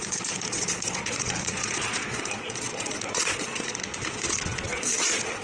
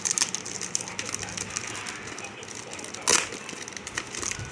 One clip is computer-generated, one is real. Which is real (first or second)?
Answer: second